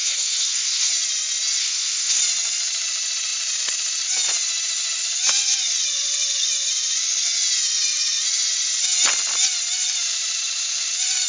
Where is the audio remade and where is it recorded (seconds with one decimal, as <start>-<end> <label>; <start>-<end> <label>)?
0.0-0.9 remade; 0.9-1.6 recorded; 1.6-2.2 remade; 2.2-11.3 recorded